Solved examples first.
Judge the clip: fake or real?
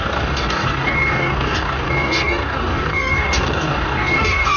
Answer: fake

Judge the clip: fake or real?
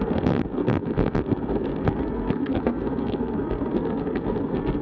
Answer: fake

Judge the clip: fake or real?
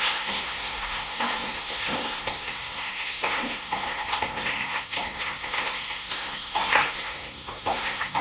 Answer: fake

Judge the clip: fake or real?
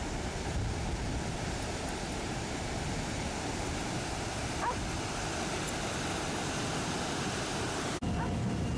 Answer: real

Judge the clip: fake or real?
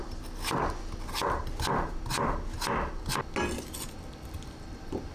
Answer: real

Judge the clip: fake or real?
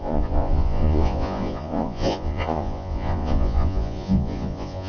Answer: fake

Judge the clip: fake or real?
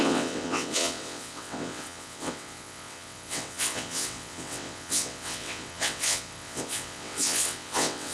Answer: fake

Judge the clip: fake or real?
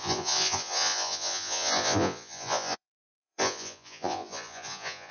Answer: fake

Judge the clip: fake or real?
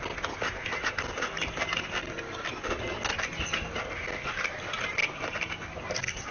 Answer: real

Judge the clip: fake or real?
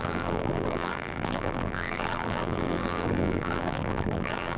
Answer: fake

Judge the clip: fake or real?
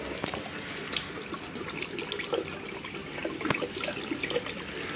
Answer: real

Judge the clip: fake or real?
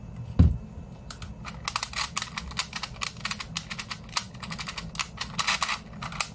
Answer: real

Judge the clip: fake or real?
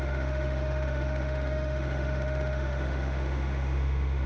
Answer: fake